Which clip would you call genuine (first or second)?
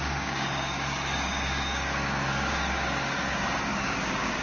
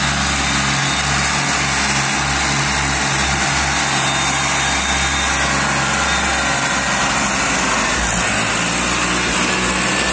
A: second